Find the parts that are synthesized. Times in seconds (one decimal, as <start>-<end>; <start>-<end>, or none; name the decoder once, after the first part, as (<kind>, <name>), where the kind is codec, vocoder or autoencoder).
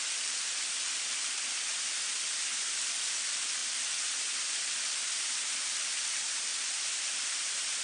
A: 5.0-5.5 (vocoder, BigVGAN v2); 6.5-7.8